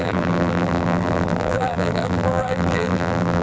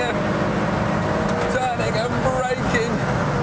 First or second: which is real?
second